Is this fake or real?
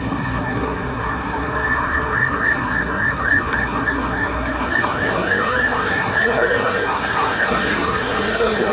fake